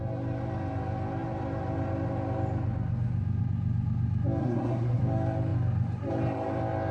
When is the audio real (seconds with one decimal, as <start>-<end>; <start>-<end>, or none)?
0.0-4.4; 5.0-6.9